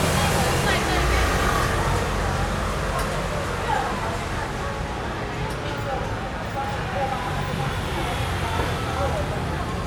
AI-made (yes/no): no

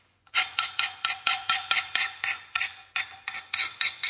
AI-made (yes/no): yes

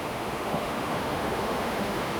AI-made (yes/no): yes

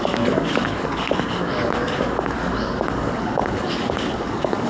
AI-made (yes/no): yes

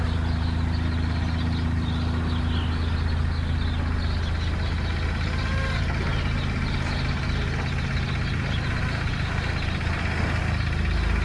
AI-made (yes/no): no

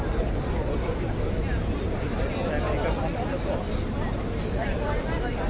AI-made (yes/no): no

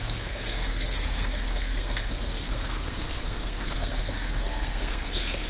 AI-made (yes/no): yes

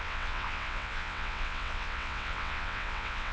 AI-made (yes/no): yes